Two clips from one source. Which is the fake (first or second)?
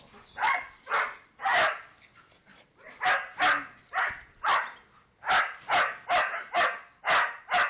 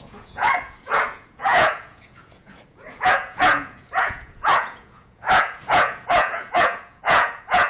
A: second